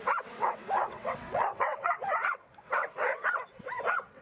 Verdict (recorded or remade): remade